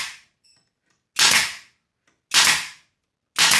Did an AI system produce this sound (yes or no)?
no